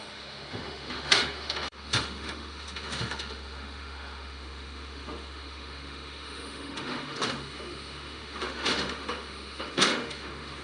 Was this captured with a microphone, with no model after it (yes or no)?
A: no